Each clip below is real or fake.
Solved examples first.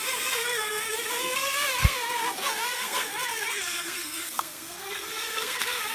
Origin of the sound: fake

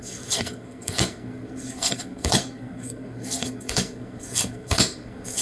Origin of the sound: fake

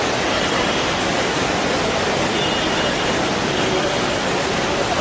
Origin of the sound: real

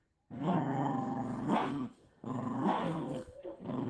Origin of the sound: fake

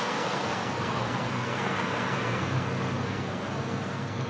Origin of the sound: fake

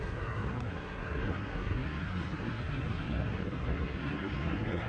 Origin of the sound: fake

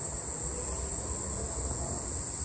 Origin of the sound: real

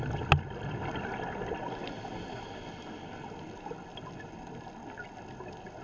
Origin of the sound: real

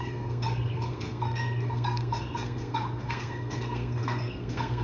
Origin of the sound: fake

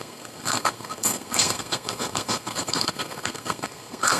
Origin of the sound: fake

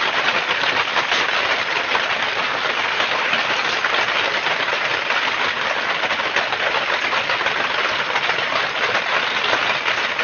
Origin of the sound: real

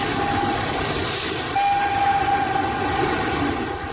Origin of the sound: real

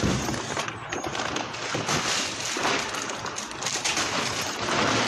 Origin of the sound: real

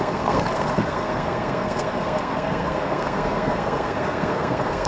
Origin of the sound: fake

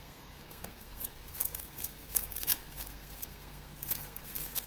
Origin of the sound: fake